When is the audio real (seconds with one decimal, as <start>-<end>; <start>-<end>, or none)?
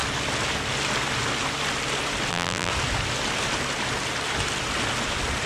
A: 0.0-2.3; 2.7-5.5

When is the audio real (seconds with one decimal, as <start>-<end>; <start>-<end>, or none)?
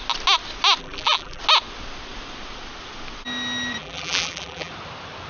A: 0.0-0.8; 1.4-3.8; 4.7-5.3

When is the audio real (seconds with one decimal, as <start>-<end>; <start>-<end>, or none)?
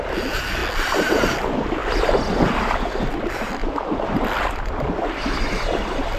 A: 0.6-1.1; 1.8-2.9; 3.6-5.4